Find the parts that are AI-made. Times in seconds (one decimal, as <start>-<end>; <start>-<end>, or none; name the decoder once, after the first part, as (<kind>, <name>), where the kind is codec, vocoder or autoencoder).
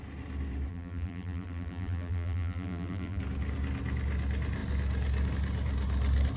0.7-3.2 (vocoder, BigVGAN v2)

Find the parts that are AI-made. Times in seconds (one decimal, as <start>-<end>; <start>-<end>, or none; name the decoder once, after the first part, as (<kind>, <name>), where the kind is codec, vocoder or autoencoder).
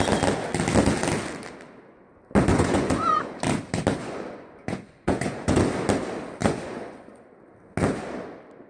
2.5-3.4 (vocoder, Vocos); 4.0-5.6; 6.4-7.2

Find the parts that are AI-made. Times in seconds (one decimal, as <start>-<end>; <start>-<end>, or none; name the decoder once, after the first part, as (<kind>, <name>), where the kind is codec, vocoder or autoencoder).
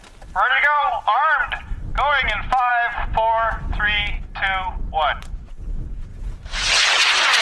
6.1-6.7 (vocoder, Vocos)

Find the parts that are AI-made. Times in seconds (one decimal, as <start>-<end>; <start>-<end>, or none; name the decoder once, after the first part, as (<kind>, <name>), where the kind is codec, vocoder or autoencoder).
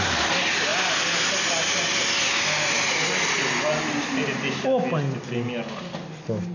none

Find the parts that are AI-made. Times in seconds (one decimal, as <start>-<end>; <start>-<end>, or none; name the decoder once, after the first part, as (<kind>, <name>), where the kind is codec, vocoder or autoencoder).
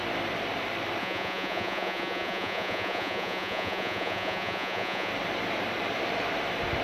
1.0-5.1 (vocoder, Vocos)